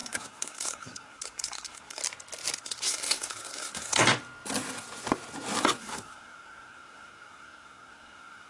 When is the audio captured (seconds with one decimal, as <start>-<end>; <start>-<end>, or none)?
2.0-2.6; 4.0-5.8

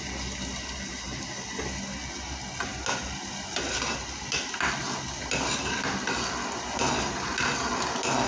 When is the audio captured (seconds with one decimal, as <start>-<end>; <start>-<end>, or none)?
0.0-8.3

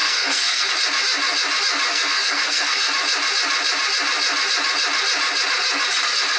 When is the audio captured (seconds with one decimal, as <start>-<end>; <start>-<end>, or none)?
0.7-1.9; 2.9-6.4

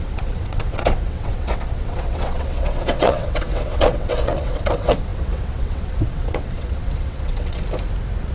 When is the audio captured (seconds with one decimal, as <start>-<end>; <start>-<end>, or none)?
7.6-8.3

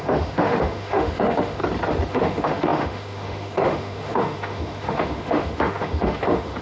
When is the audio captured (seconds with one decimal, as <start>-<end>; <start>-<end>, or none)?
1.6-2.1

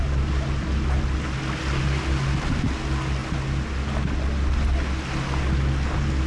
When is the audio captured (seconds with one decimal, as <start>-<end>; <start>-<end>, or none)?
0.0-6.3